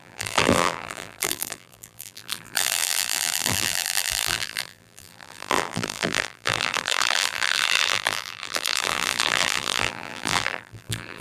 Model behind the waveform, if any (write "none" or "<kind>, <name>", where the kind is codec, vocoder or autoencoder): vocoder, BigVGAN v2